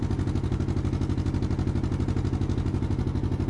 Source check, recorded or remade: recorded